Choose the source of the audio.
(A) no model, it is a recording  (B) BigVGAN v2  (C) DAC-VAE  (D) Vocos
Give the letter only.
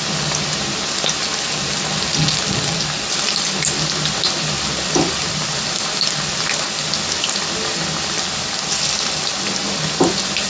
A